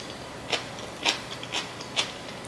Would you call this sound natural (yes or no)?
yes